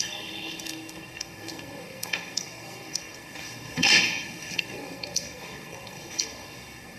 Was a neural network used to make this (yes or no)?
yes